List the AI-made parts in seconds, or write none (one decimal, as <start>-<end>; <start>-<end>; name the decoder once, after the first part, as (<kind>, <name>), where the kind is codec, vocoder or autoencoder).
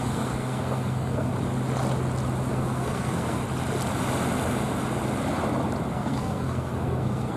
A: 0.0-1.3 (codec, SNAC); 2.5-3.4; 5.9-7.4